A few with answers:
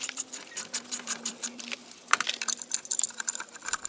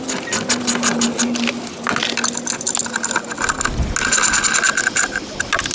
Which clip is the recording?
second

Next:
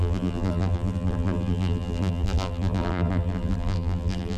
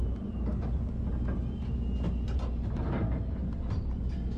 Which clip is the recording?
second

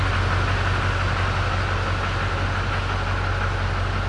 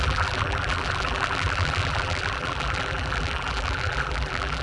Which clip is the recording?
first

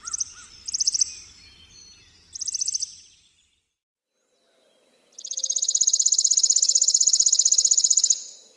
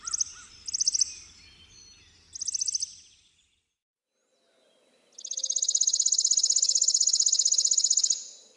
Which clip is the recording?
second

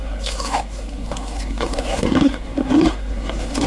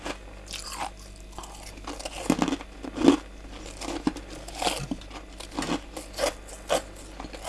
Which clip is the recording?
second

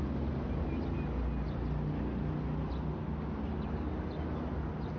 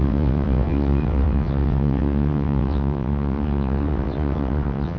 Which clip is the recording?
first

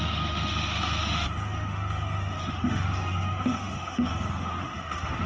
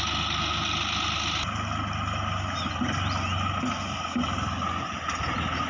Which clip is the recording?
second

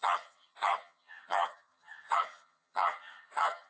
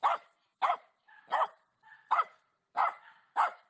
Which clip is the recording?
second